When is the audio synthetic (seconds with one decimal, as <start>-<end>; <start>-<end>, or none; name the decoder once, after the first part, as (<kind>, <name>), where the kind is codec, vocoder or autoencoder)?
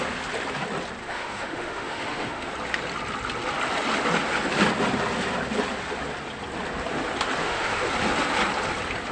1.0-2.5 (autoencoder, DAC-VAE); 7.4-7.9